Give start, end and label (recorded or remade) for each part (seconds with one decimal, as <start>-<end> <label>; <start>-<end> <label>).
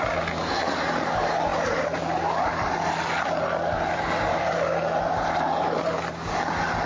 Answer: 0.0-0.6 recorded; 0.6-1.1 remade; 1.1-6.9 recorded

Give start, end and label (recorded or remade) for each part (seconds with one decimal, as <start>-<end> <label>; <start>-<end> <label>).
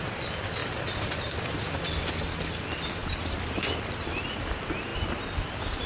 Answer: 0.0-3.0 recorded; 3.0-4.1 remade; 4.1-5.9 recorded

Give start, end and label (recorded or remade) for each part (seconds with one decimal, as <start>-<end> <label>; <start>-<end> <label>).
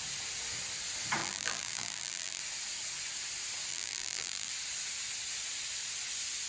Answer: 0.0-1.2 recorded; 1.2-2.4 remade; 2.4-3.7 recorded; 3.7-4.5 remade; 4.5-6.5 recorded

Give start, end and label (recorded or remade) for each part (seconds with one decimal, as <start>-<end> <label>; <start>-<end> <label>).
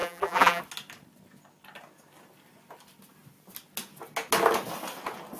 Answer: 0.0-0.6 remade; 0.6-5.4 recorded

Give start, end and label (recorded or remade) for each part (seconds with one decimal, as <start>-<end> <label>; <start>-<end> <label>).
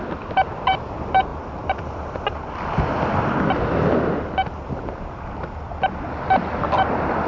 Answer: 0.0-7.3 recorded